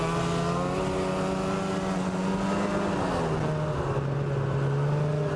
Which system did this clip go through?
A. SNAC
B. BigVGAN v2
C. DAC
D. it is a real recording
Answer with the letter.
D